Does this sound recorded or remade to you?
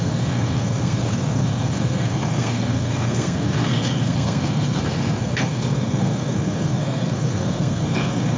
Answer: remade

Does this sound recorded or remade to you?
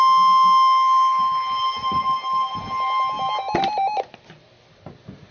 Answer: recorded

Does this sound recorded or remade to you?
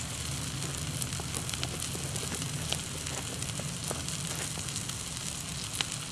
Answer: recorded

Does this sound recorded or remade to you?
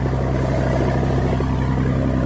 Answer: recorded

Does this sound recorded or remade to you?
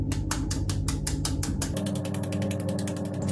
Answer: recorded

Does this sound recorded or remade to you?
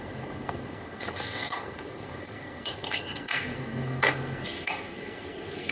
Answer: remade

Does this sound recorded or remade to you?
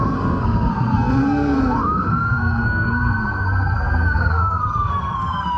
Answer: remade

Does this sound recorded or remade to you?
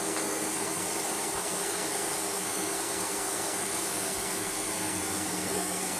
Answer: remade